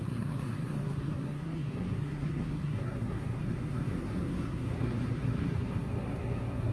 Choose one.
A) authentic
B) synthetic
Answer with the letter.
B